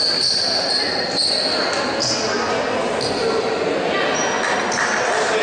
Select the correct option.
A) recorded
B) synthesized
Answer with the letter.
A